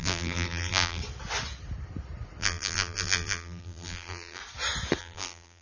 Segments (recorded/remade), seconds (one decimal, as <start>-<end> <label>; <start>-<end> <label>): 0.0-1.0 remade; 1.0-2.4 recorded; 2.4-4.4 remade; 4.4-5.0 recorded; 5.0-5.6 remade